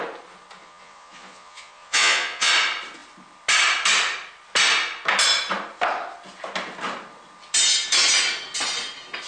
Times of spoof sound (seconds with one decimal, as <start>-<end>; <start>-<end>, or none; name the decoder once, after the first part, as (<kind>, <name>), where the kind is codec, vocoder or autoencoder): 0.6-2.5 (vocoder, Vocos)